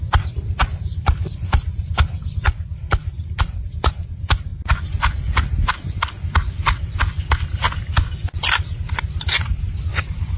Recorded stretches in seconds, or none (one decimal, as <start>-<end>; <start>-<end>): 0.0-10.4